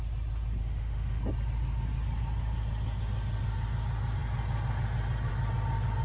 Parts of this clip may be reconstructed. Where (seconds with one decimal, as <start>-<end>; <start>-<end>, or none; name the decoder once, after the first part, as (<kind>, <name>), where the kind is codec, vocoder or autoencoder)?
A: 0.6-1.2 (autoencoder, DAC-VAE)